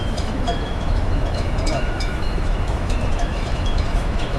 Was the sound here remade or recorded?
remade